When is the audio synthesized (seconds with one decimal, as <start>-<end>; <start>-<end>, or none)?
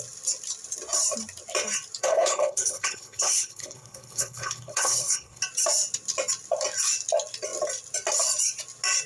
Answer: 2.0-5.4